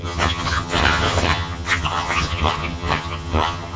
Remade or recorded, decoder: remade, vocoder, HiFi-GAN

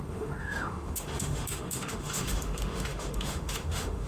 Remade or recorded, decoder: remade, autoencoder, DAC-VAE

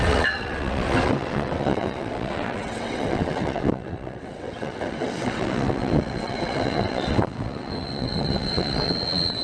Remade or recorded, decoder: remade, vocoder, WaveNeXt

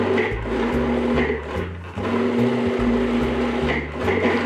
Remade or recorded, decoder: recorded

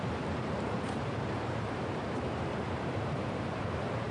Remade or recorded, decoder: remade, vocoder, BigVGAN v2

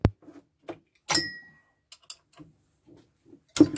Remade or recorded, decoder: recorded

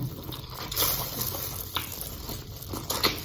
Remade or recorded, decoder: recorded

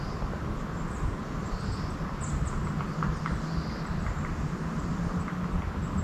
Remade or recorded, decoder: recorded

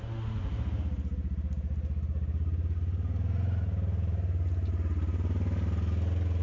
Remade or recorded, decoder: recorded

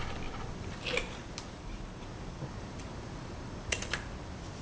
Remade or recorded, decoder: recorded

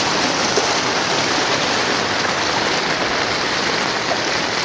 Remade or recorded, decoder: recorded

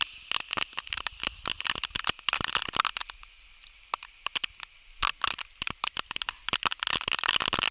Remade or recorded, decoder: recorded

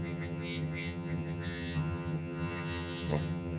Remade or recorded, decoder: remade, vocoder, HiFi-GAN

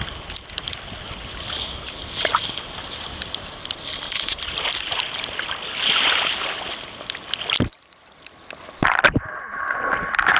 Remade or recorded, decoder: recorded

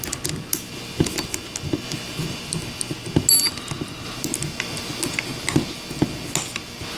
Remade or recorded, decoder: recorded